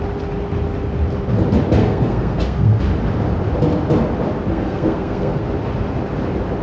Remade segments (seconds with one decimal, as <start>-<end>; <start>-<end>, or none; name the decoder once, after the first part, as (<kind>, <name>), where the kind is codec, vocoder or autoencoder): 1.8-2.8 (codec, SNAC); 4.5-5.4